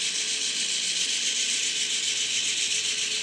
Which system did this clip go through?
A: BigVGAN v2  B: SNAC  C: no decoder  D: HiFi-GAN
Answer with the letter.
C